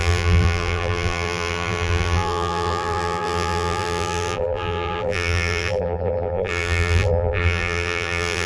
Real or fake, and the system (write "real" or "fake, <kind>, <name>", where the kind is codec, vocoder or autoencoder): fake, vocoder, BigVGAN v2